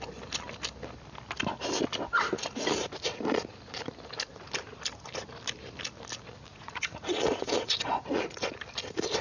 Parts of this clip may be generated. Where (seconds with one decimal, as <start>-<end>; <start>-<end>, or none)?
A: 6.5-8.4